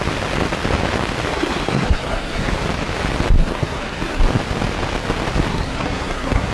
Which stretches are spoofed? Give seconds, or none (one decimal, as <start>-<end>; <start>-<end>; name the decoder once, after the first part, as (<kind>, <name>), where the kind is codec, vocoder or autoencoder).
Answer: 1.3-2.5 (codec, SNAC); 3.4-4.2; 5.5-6.5